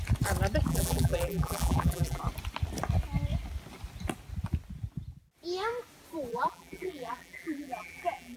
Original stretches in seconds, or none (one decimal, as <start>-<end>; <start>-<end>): 0.0-0.7; 2.2-6.3